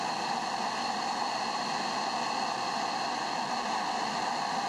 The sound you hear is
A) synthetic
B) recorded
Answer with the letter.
B